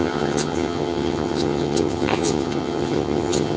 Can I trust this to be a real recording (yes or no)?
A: no